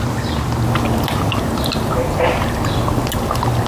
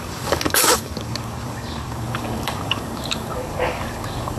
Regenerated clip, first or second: second